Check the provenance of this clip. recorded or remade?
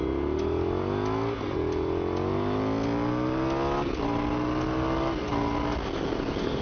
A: recorded